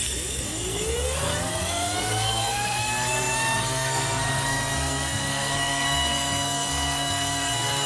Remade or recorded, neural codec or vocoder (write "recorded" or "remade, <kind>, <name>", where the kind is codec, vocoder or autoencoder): remade, codec, SNAC